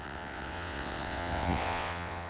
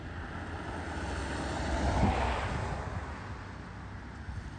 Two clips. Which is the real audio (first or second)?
second